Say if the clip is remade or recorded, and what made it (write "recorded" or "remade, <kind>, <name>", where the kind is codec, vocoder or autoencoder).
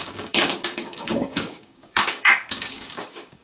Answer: remade, codec, DAC